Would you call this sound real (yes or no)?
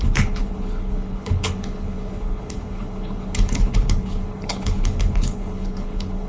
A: no